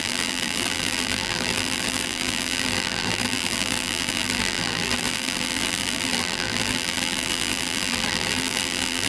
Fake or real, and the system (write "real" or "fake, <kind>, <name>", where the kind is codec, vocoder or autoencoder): fake, vocoder, BigVGAN v2